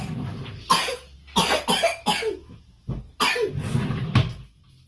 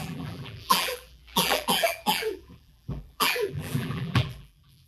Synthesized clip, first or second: second